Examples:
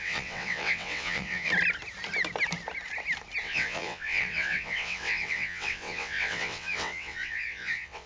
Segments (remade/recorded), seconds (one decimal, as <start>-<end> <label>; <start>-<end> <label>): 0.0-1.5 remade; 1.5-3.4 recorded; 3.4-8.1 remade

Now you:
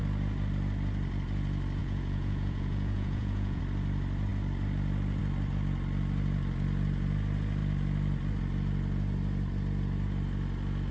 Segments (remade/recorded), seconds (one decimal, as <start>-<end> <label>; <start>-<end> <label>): 0.0-1.8 recorded; 1.8-3.6 remade; 3.6-10.9 recorded

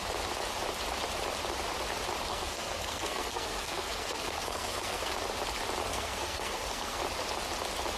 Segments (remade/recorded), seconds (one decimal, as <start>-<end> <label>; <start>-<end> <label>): 0.0-2.3 recorded; 2.3-5.1 remade; 5.1-5.9 recorded; 5.9-7.0 remade; 7.0-8.0 recorded